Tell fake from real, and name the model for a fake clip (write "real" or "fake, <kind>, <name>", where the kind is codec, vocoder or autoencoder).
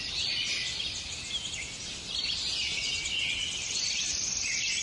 real